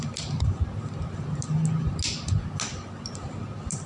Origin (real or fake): real